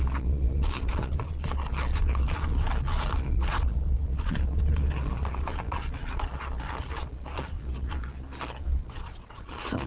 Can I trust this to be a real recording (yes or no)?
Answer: no